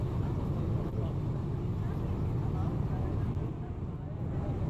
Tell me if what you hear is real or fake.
real